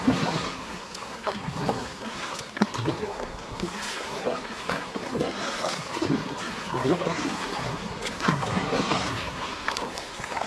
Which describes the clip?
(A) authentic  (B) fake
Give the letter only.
B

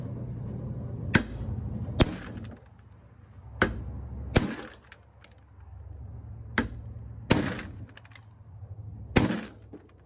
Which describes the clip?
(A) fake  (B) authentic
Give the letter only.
B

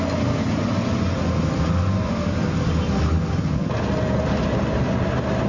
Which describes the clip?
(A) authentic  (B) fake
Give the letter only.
A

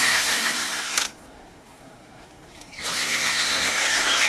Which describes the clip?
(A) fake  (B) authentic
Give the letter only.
A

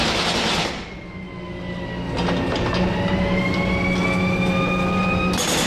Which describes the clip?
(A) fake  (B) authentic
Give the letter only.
B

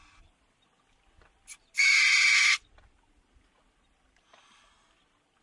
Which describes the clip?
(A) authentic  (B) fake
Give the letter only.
A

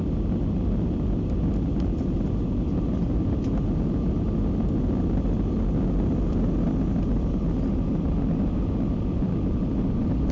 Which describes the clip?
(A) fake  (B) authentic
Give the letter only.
B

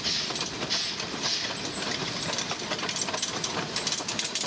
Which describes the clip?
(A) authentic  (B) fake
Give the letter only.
A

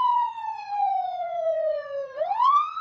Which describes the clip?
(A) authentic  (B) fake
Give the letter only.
B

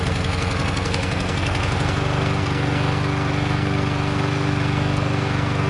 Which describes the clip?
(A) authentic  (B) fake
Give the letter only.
B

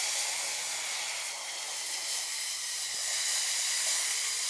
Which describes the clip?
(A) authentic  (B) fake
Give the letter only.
B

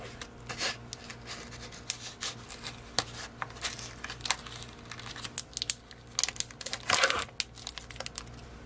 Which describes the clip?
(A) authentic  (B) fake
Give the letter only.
A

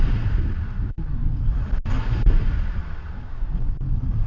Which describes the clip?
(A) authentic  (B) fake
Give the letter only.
A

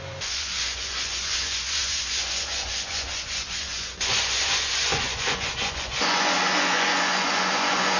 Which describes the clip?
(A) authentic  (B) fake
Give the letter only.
B